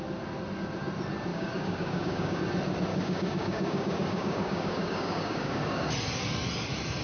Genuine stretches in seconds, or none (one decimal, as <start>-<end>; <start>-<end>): 0.0-1.3; 2.4-2.9; 5.9-7.0